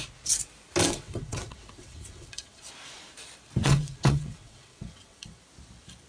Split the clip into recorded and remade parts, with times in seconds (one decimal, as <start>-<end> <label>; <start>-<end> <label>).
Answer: 0.0-0.8 recorded; 0.8-2.7 remade; 2.7-3.6 recorded; 3.6-5.4 remade; 5.4-6.1 recorded